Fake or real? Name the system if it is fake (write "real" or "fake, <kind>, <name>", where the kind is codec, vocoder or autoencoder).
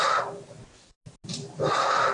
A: real